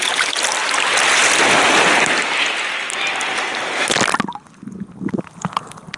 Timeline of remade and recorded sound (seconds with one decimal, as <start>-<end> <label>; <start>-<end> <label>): 0.0-6.0 recorded